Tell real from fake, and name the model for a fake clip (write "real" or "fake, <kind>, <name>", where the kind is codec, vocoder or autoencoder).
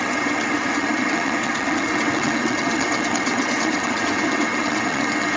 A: fake, vocoder, WaveNeXt